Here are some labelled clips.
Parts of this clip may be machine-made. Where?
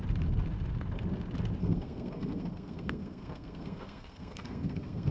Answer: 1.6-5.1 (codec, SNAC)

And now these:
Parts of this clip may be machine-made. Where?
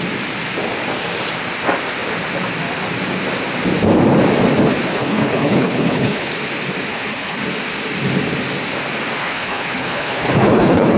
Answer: 4.9-6.3 (codec, HILCodec); 6.9-7.4; 9.2-11.0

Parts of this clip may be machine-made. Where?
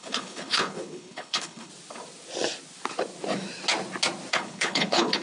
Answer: 0.0-1.7 (codec, HILCodec); 4.3-5.2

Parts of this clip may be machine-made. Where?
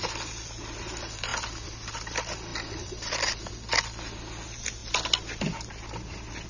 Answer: none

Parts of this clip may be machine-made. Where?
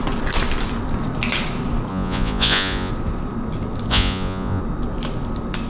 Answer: 1.9-2.9 (vocoder, Vocos); 3.9-4.6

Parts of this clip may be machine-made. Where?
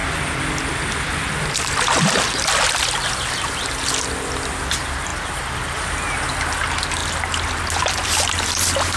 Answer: none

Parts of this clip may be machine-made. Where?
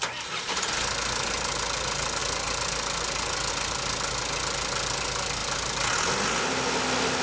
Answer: none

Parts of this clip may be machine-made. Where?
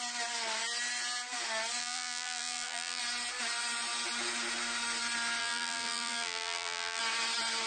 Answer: 1.8-3.0 (vocoder, BigVGAN v2); 5.4-7.0